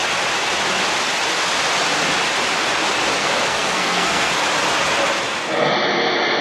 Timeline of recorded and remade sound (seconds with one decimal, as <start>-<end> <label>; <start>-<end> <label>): 0.0-3.2 recorded; 3.2-4.3 remade; 4.3-6.4 recorded